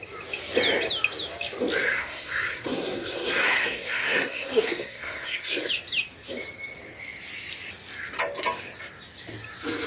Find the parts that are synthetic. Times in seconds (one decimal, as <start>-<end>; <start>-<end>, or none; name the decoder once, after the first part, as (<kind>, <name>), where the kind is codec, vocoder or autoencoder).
1.8-5.7 (codec, SNAC)